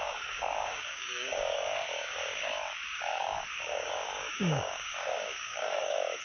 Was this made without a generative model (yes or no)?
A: no